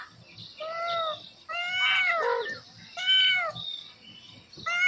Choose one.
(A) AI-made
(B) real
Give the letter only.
B